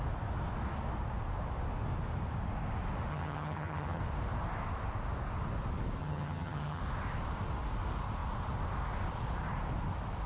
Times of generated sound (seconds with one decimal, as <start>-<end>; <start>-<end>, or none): 3.1-4.0; 6.0-6.8